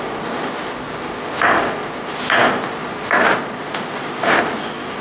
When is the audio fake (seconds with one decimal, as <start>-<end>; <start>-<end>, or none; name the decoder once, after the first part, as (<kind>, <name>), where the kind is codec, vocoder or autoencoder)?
none